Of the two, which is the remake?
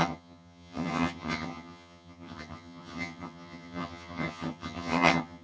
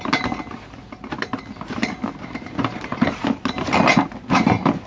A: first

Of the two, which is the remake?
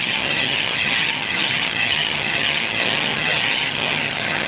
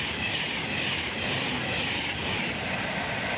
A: first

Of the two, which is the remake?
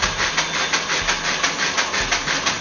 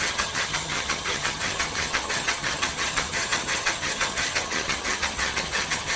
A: second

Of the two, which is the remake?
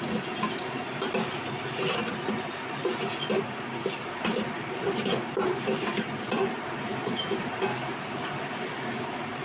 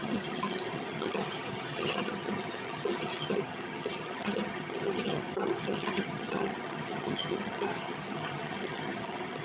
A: second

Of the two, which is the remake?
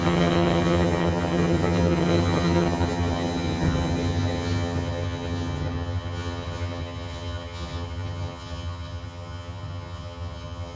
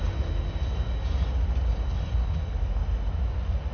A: first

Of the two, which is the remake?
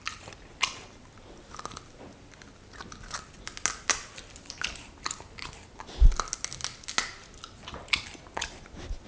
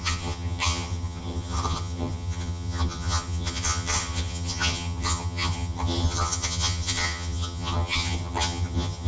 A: second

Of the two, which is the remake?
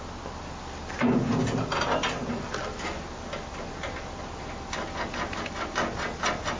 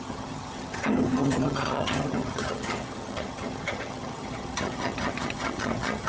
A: second